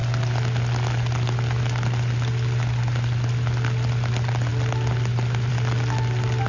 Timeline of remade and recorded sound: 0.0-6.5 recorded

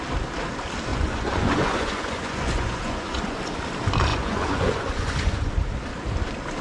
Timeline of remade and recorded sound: 0.0-0.9 recorded; 0.9-3.4 remade; 3.4-4.1 recorded; 4.1-5.5 remade; 5.5-6.6 recorded

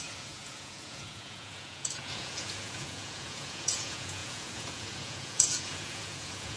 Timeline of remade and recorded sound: 0.0-6.6 remade

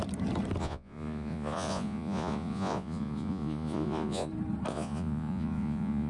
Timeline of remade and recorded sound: 0.0-0.6 recorded; 0.6-4.3 remade; 4.3-4.7 recorded; 4.7-6.1 remade